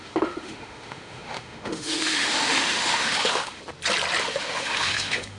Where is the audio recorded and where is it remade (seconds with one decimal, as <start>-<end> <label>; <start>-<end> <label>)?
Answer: 0.0-3.6 remade; 3.6-4.2 recorded; 4.2-5.4 remade